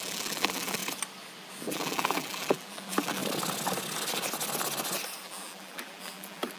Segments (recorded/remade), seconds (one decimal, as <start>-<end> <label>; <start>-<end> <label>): 0.0-0.8 remade; 0.8-1.6 recorded; 1.6-3.2 remade; 3.2-5.2 recorded; 5.2-6.6 remade